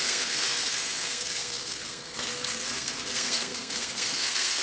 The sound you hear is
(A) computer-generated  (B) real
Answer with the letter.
A